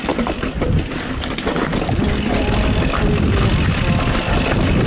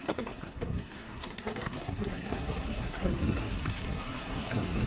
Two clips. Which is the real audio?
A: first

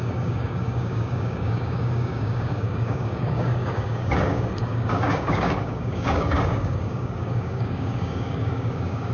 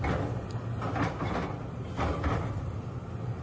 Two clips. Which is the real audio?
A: second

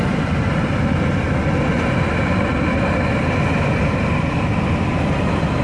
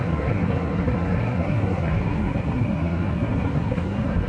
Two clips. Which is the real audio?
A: first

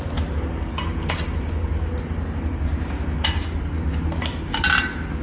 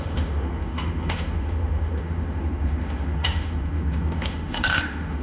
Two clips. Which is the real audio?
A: first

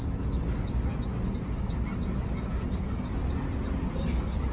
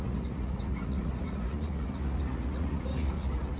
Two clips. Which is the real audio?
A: first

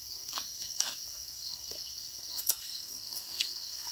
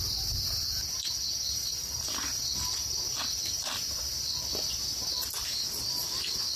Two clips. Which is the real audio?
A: second